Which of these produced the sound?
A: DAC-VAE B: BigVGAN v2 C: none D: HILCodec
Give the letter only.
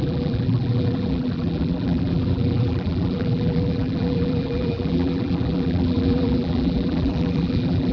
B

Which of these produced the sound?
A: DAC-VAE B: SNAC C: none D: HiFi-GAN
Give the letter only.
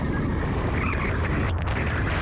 C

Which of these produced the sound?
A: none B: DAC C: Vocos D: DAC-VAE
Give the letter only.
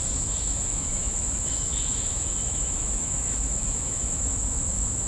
D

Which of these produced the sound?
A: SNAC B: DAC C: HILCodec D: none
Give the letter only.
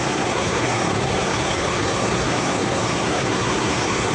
A